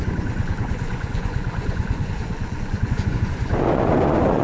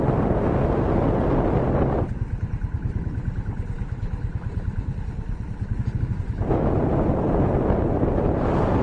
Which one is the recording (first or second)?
second